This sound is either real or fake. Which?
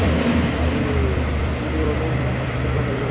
fake